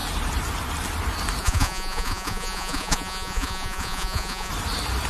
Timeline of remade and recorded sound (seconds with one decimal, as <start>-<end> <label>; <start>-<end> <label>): 0.0-1.4 recorded; 1.4-4.5 remade; 4.5-5.1 recorded